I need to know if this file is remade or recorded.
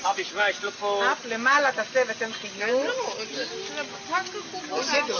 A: recorded